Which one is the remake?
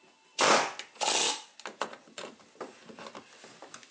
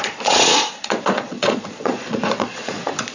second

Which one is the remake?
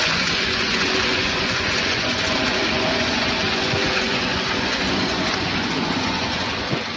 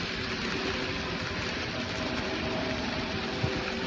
first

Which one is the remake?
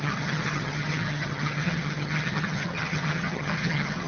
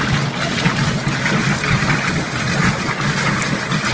first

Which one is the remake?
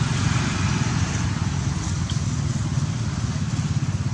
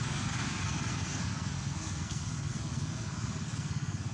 second